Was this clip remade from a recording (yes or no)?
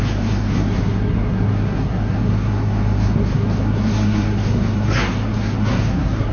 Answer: yes